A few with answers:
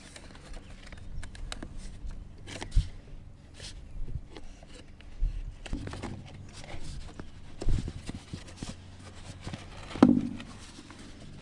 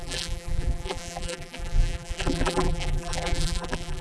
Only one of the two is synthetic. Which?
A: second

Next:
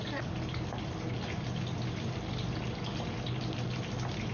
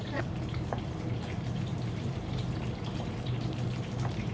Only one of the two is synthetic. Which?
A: second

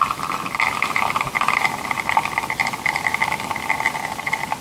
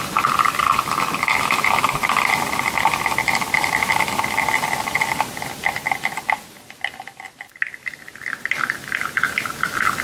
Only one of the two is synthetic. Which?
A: first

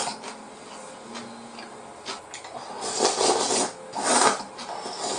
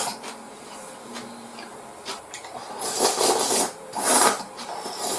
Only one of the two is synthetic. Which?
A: second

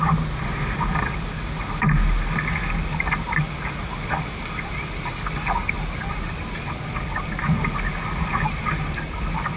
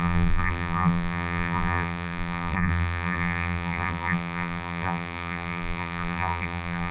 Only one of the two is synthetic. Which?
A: second